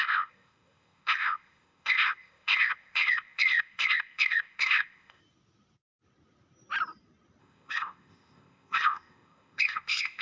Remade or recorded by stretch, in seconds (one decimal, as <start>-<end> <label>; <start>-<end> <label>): 0.0-5.2 remade; 5.2-7.4 recorded; 7.4-10.2 remade